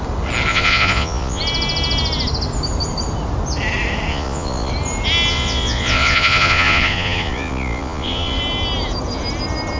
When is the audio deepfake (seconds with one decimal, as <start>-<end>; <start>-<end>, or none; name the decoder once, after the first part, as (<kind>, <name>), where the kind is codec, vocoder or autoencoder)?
0.5-1.4 (vocoder, Vocos); 4.1-4.7; 5.3-8.4